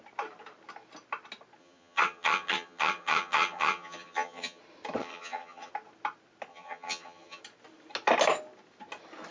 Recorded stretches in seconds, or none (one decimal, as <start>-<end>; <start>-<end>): 0.0-1.6; 4.6-5.0; 5.7-6.5; 7.4-9.3